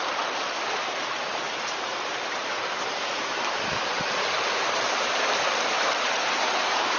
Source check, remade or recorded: remade